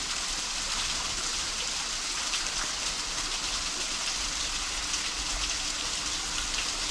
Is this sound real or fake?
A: real